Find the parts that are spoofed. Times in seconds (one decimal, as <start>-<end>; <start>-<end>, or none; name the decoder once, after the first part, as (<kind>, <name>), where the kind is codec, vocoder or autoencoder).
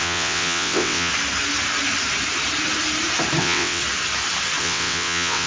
0.0-1.1 (vocoder, WaveNeXt); 3.4-3.8; 4.6-5.5